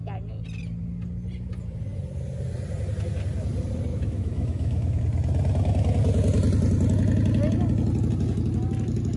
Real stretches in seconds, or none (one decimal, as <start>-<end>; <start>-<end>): 0.0-3.9; 5.0-9.2